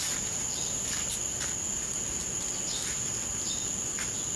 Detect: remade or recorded recorded